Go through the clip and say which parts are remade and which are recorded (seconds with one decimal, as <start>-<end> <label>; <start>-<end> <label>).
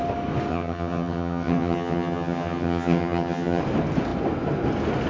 0.0-0.5 recorded; 0.5-3.6 remade; 3.6-5.1 recorded